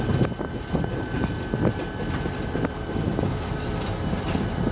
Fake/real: real